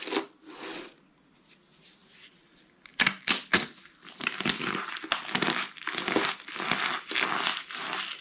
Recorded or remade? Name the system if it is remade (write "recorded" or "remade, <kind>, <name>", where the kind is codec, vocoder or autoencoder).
recorded